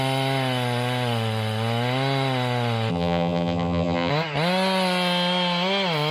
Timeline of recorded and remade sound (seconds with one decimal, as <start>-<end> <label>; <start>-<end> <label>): 0.0-2.9 recorded; 2.9-4.1 remade; 4.1-6.1 recorded